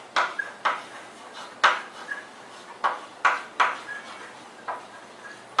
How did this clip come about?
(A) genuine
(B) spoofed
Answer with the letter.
A